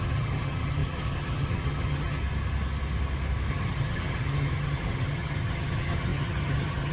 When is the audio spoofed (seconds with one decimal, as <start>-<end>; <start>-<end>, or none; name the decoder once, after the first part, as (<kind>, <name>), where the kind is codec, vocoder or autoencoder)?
0.0-2.2 (vocoder, HiFi-GAN); 3.5-6.9